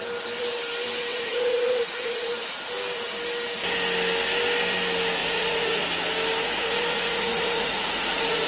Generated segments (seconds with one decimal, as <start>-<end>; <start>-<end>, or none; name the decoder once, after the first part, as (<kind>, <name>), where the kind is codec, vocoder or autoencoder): 1.1-2.7 (vocoder, Vocos); 5.2-5.9; 6.4-8.5